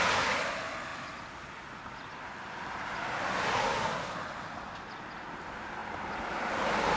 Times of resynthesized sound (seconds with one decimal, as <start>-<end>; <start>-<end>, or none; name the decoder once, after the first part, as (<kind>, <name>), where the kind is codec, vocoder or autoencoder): 5.8-6.4 (vocoder, BigVGAN v2)

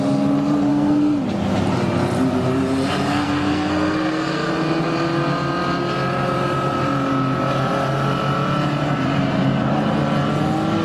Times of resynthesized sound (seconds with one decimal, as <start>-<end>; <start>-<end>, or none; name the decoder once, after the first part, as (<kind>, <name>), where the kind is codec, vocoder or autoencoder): 0.7-1.2 (codec, SNAC); 3.1-4.5

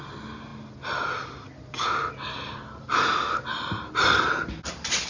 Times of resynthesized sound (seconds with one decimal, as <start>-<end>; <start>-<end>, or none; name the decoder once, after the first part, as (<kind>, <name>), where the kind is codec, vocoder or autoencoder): none

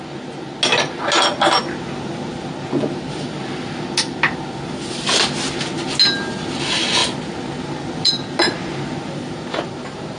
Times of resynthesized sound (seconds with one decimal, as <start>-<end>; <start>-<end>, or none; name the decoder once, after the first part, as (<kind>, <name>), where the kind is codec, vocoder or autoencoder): none

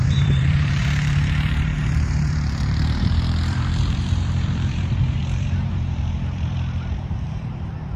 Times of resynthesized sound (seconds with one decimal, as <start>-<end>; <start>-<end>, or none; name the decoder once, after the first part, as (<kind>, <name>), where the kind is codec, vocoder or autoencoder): 0.0-8.0 (vocoder, BigVGAN v2)